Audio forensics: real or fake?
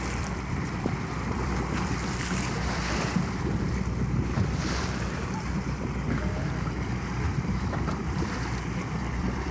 fake